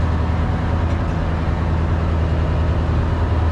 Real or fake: real